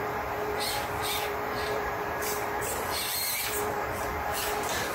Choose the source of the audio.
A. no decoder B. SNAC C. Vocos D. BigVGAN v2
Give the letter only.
D